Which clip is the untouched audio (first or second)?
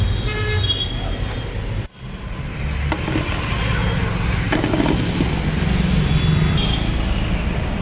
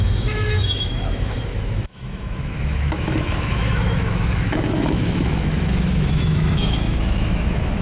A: first